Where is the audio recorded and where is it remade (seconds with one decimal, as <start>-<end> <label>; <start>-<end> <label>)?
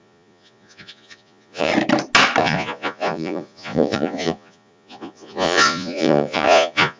0.0-1.7 remade; 1.7-2.4 recorded; 2.4-7.0 remade